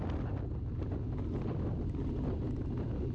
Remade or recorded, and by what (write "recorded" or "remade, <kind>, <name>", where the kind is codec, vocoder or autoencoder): recorded